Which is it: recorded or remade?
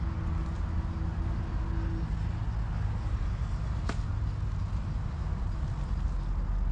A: recorded